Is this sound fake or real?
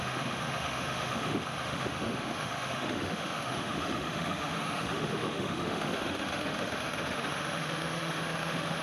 fake